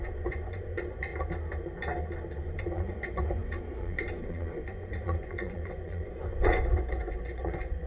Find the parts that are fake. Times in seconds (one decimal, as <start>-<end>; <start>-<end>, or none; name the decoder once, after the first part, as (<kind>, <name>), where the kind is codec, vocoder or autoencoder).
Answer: 0.0-1.1 (vocoder, Vocos); 2.6-7.9

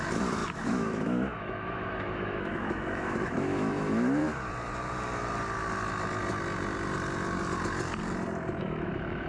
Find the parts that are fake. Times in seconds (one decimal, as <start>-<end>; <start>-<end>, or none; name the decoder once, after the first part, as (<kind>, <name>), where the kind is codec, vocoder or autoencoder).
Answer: 0.0-4.2 (autoencoder, DAC-VAE); 8.6-9.3

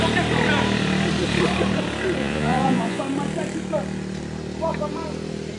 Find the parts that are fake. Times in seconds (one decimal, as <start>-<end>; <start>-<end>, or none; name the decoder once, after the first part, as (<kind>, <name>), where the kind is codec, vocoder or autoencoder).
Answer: 2.2-3.0 (vocoder, Vocos)

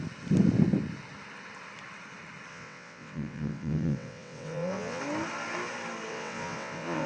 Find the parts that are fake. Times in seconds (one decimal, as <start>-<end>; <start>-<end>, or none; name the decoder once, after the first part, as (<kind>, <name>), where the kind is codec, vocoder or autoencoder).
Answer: 2.5-5.0 (vocoder, WaveNeXt); 6.1-7.1

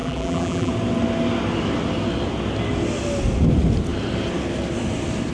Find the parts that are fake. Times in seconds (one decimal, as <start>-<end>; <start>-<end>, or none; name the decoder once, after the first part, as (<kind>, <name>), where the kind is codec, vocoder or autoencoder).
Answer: 0.0-0.7 (vocoder, BigVGAN v2)